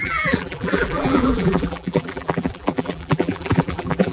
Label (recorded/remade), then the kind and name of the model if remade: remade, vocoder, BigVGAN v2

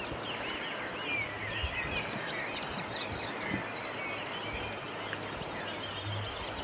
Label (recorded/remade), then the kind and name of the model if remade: recorded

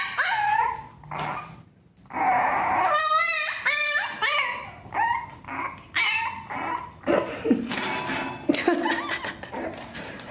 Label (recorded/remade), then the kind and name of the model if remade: recorded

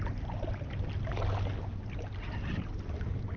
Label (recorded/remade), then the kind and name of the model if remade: recorded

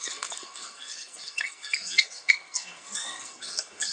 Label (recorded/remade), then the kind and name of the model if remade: remade, codec, SNAC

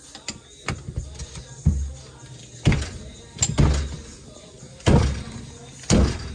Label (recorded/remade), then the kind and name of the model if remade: recorded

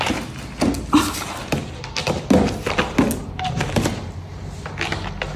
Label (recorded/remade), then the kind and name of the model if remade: recorded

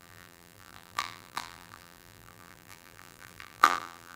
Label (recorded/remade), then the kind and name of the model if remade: remade, vocoder, BigVGAN v2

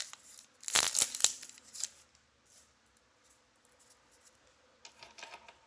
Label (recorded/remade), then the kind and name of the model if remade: recorded